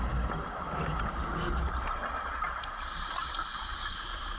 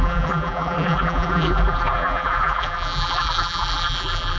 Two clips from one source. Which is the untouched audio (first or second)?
first